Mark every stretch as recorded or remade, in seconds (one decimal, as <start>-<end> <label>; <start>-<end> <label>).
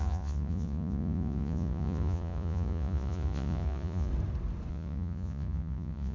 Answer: 0.0-4.1 remade; 4.1-4.7 recorded; 4.7-6.1 remade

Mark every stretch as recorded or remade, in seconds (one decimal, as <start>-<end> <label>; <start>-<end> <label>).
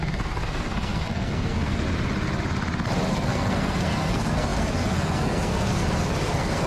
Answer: 0.0-1.8 remade; 1.8-3.1 recorded; 3.1-6.7 remade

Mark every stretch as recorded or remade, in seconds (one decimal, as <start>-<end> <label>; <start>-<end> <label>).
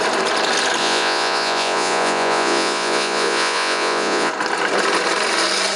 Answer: 0.0-0.8 recorded; 0.8-4.3 remade; 4.3-5.8 recorded